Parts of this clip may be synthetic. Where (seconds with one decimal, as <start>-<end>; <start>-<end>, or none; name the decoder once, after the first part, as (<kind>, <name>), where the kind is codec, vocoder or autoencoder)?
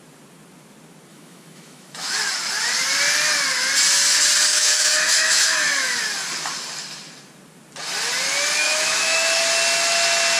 1.1-2.2 (autoencoder, DAC-VAE); 4.5-6.0; 8.6-9.4